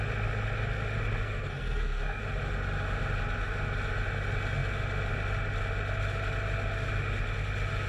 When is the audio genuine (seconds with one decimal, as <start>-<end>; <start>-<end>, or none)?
0.0-1.2; 2.2-7.9